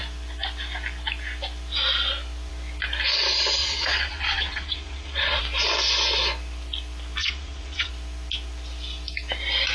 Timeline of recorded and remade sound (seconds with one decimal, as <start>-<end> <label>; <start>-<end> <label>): 0.0-3.6 recorded; 3.6-5.4 remade; 5.4-7.2 recorded; 7.2-7.9 remade; 7.9-9.7 recorded